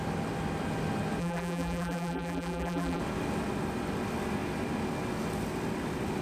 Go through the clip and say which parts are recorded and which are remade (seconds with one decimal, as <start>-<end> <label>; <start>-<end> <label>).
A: 0.0-1.2 recorded; 1.2-3.0 remade; 3.0-6.2 recorded